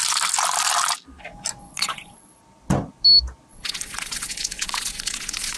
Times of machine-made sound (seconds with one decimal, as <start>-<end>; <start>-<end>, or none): 1.6-2.4; 3.5-5.6

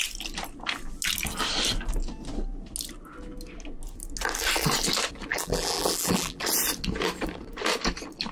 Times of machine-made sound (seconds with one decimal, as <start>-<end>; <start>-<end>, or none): 5.3-6.4

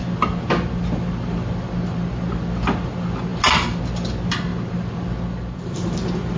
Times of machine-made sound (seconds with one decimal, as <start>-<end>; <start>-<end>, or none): none

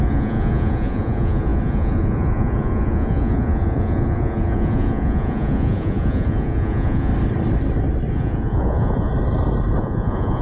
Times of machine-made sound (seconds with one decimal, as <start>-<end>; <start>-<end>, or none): 0.0-7.1; 8.1-9.1; 9.8-10.4

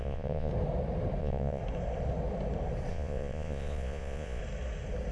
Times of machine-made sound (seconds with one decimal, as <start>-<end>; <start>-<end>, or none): 0.0-0.5; 1.2-1.6; 2.9-4.4

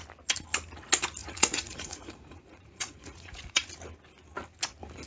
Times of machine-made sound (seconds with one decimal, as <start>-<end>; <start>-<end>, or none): 1.2-3.7

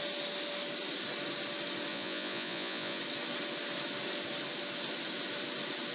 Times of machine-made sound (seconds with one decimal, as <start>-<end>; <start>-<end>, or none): 1.9-3.0